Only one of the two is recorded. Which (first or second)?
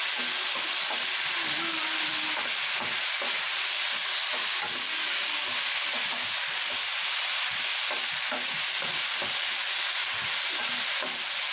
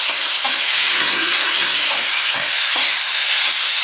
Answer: first